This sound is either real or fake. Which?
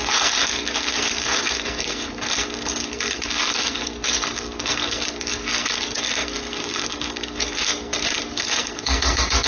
fake